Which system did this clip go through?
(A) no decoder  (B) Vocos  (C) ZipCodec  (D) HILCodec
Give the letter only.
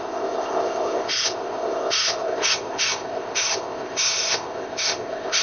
C